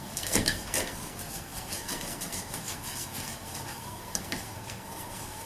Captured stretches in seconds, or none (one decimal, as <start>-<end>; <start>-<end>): none